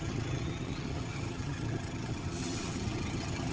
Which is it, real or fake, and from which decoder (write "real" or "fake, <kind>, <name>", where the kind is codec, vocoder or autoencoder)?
fake, vocoder, HiFi-GAN